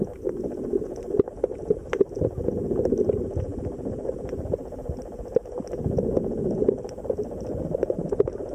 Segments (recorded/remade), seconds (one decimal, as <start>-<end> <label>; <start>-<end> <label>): 0.0-8.5 recorded